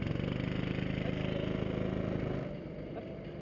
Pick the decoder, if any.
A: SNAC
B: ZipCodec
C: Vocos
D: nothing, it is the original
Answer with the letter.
D